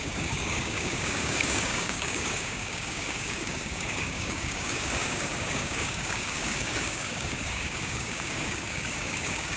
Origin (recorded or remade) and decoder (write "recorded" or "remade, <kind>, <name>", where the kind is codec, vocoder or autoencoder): remade, codec, DAC